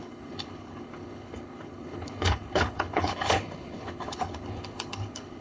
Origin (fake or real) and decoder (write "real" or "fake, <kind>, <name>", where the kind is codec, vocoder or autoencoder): fake, codec, HILCodec